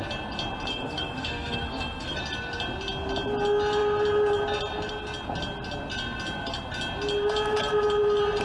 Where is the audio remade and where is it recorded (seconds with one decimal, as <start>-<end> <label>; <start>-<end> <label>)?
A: 0.0-0.7 recorded; 0.7-2.2 remade; 2.2-8.4 recorded